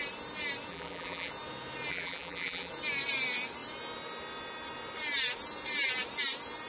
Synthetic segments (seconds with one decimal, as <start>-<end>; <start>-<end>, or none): 0.7-1.3; 1.9-2.7